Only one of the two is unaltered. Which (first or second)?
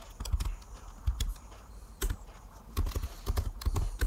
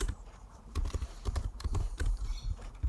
first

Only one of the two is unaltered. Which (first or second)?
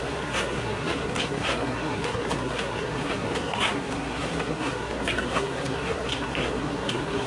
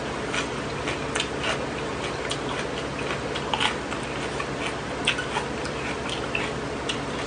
second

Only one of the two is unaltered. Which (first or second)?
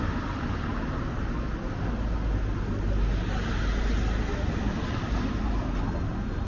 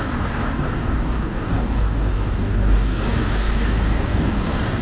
first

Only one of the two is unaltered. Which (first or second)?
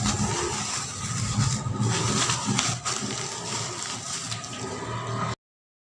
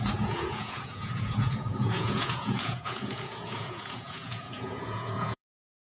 first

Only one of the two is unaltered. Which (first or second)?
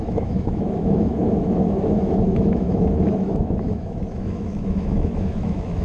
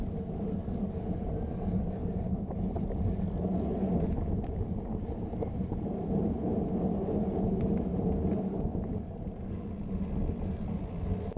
second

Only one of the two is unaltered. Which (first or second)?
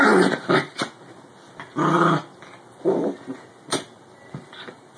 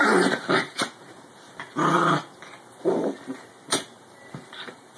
first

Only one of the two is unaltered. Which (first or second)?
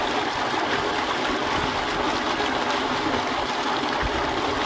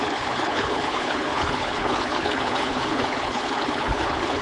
first